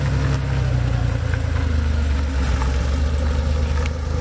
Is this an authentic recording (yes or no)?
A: yes